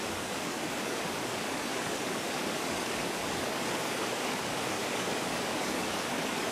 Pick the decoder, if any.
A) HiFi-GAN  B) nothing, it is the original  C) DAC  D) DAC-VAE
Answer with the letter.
C